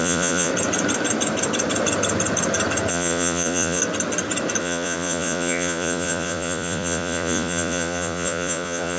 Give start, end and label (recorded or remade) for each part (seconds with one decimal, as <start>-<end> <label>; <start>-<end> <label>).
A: 0.0-0.5 remade; 0.5-2.9 recorded; 2.9-3.8 remade; 3.8-4.6 recorded; 4.6-9.0 remade